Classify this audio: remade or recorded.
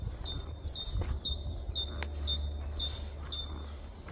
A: recorded